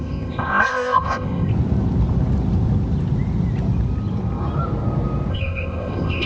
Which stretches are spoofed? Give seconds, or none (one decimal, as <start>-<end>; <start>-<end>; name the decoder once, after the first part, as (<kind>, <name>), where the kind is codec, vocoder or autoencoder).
0.0-1.5 (codec, ZipCodec); 5.3-6.3